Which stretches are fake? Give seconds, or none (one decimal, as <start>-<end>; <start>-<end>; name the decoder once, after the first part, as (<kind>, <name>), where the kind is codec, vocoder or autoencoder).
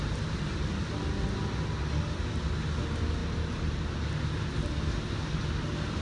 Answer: none